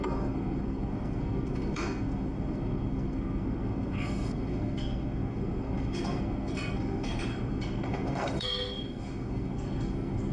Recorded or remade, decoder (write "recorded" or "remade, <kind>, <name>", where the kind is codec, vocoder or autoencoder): remade, codec, SNAC